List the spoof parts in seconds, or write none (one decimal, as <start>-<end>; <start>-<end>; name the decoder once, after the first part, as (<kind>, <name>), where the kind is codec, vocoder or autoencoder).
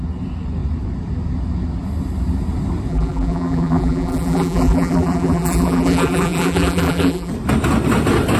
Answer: 2.9-7.3 (vocoder, BigVGAN v2)